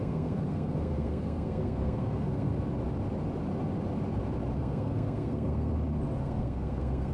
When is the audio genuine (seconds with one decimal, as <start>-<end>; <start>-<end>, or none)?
2.5-4.6; 5.7-6.2

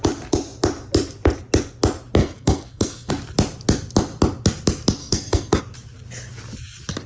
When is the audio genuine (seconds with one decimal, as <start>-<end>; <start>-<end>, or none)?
0.0-2.2; 3.1-5.0; 5.6-7.1